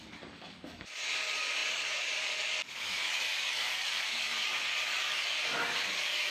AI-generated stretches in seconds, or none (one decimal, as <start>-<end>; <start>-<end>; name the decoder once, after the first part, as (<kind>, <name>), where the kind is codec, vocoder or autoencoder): 0.0-6.3 (codec, DAC)